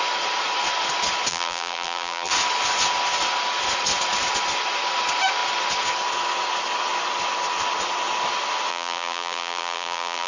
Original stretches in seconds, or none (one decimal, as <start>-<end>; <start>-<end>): 0.0-1.3; 2.3-8.7